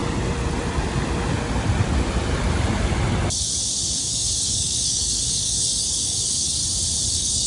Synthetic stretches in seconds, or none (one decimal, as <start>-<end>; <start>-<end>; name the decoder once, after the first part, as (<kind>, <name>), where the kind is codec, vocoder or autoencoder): 4.0-6.6 (codec, DAC); 7.1-7.5

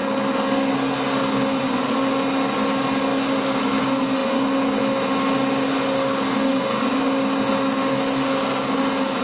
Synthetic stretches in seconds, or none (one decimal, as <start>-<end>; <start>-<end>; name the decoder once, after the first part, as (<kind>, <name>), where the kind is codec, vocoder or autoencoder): none

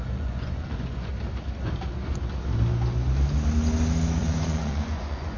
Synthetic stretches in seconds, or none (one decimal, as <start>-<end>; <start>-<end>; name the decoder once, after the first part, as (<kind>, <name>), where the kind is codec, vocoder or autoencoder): 0.0-1.1 (vocoder, Vocos); 4.2-5.4